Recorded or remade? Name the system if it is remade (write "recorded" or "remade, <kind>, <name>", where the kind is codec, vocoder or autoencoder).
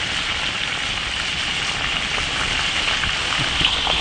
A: recorded